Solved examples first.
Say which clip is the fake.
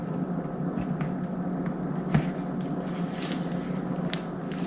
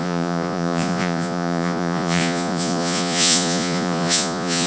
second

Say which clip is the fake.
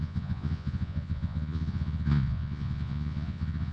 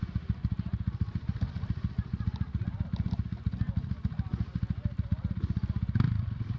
first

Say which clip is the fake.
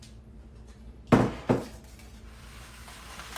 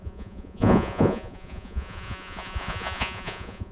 second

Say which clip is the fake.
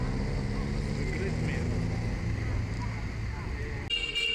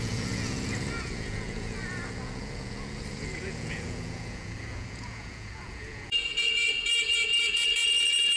second